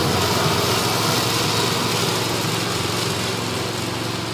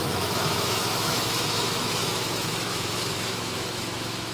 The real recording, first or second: first